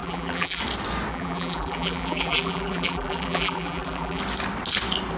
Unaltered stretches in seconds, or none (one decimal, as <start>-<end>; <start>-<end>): 0.6-1.1; 4.2-5.2